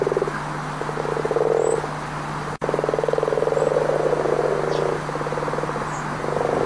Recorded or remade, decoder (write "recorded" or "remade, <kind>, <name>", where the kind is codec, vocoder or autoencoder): recorded